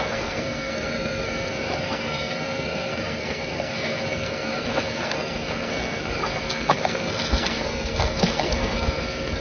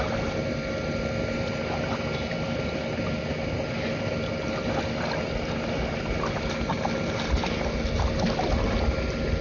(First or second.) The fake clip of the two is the first